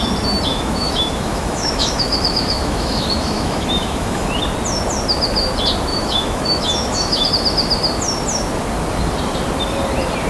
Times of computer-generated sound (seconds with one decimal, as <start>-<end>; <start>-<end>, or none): 0.5-4.4; 5.9-7.3